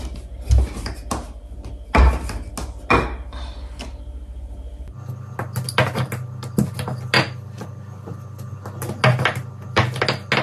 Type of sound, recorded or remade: recorded